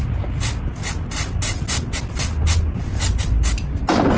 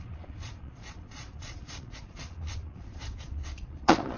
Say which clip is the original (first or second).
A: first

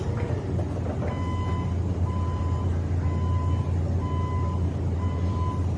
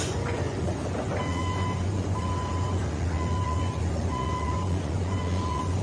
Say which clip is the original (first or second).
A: first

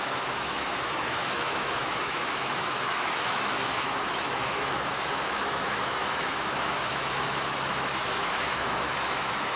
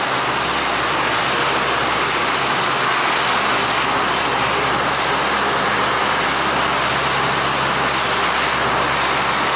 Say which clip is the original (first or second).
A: second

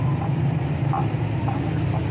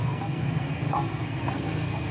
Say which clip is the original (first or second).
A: first